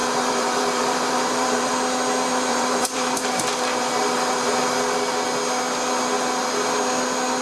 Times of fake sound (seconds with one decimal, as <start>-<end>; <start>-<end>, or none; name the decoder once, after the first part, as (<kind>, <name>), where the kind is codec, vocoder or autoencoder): 0.0-1.7 (vocoder, BigVGAN v2); 2.5-3.3; 3.7-4.6